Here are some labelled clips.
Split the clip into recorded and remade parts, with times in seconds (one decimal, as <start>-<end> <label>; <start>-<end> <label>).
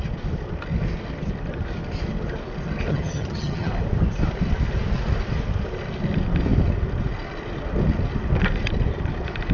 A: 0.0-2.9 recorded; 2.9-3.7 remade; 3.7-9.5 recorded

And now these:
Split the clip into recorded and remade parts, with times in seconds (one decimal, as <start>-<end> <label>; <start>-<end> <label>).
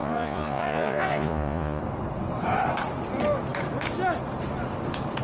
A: 0.0-1.8 remade; 1.8-5.2 recorded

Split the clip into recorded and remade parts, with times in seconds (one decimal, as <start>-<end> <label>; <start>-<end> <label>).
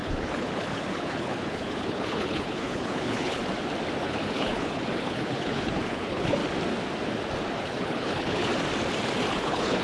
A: 0.0-3.4 remade; 3.4-4.0 recorded; 4.0-6.4 remade; 6.4-7.6 recorded; 7.6-8.5 remade; 8.5-9.3 recorded; 9.3-9.8 remade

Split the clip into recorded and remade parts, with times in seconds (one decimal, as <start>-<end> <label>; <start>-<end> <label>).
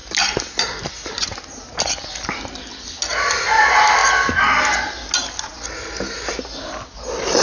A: 0.0-7.4 recorded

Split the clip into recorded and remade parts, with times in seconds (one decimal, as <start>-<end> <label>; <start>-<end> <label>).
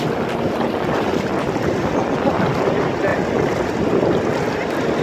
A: 0.0-5.0 recorded